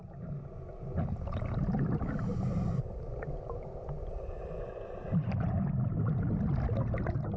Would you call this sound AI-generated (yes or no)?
no